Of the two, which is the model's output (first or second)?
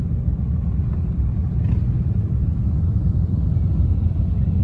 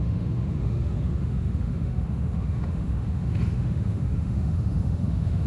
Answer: second